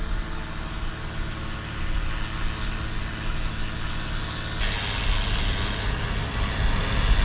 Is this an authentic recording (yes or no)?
yes